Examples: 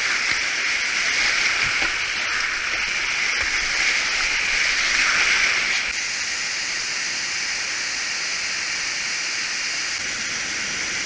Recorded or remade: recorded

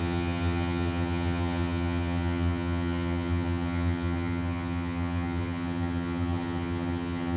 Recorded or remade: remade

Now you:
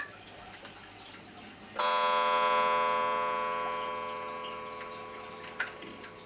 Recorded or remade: recorded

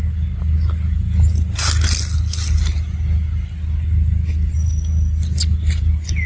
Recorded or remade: recorded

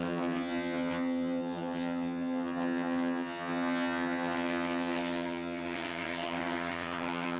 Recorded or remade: remade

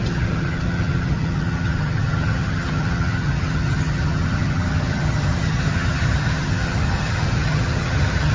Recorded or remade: remade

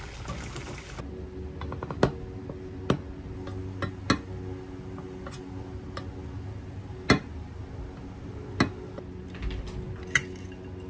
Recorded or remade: recorded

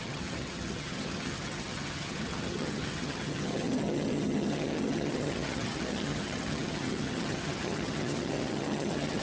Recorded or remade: remade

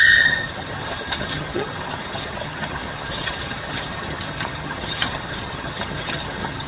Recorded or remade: remade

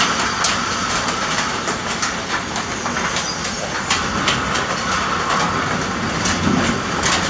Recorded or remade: recorded